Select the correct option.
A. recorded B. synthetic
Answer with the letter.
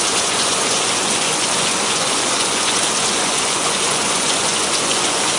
B